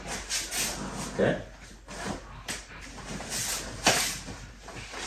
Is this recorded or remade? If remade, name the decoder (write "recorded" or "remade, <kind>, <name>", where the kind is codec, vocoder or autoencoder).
recorded